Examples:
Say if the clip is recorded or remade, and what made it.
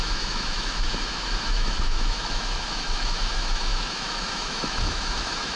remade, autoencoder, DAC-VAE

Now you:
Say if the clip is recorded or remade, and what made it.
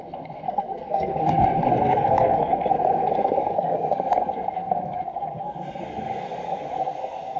remade, codec, SNAC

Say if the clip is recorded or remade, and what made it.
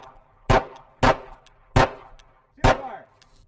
recorded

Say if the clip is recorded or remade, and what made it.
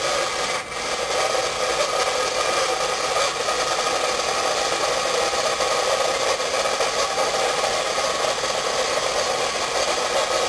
recorded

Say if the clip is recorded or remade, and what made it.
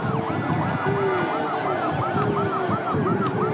recorded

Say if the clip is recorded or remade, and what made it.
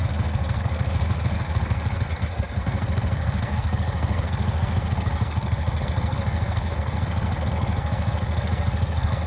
remade, codec, SNAC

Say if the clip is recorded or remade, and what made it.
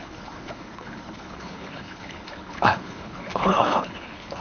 remade, codec, HILCodec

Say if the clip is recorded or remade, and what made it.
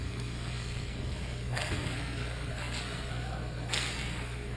remade, codec, SNAC